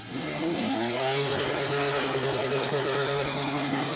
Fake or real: fake